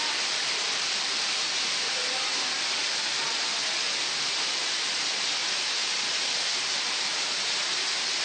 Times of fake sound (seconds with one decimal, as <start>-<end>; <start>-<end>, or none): none